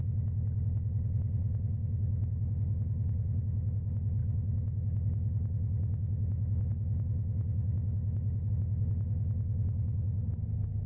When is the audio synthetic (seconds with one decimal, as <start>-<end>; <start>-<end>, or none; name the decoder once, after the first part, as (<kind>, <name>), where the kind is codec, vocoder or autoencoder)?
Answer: 1.4-3.4 (autoencoder, DAC-VAE); 4.2-8.5